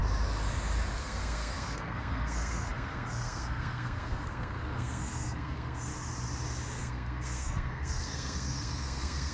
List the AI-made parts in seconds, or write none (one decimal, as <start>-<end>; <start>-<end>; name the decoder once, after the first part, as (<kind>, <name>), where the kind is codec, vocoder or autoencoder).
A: 1.0-5.9 (codec, SNAC); 6.8-9.3